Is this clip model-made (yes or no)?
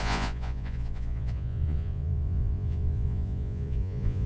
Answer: yes